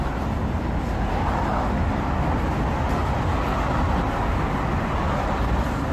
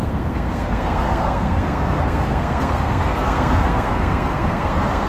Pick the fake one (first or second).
second